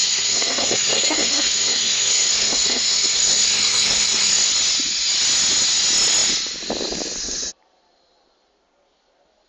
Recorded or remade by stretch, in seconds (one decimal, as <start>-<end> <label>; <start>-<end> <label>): 0.0-4.5 remade; 4.5-9.5 recorded